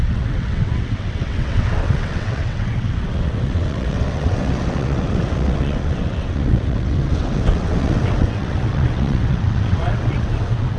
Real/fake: fake